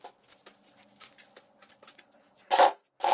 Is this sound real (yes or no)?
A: yes